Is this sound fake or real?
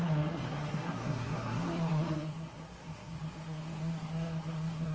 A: fake